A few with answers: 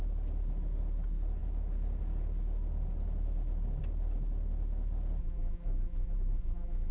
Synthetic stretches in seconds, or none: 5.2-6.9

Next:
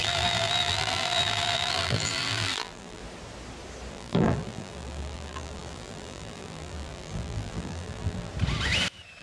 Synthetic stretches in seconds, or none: 0.0-3.0; 3.9-8.3

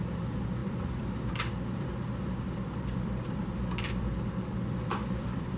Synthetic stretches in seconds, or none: 0.0-5.6

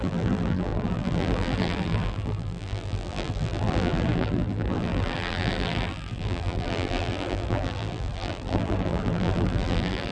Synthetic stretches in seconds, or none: 0.0-10.1

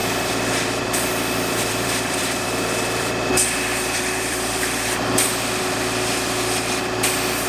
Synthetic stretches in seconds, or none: 0.0-3.3; 3.7-5.6

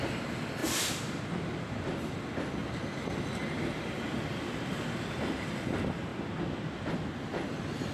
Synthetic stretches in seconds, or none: 0.6-2.2

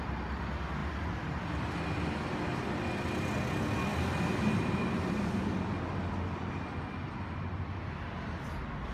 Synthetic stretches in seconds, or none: 0.8-1.8; 3.9-5.4

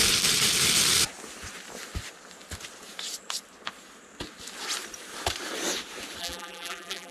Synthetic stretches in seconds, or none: 6.2-7.1